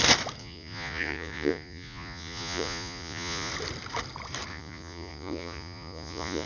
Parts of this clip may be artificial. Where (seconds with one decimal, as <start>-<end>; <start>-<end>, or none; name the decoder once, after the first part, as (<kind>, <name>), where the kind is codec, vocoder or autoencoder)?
0.4-3.5 (vocoder, Vocos); 4.5-6.5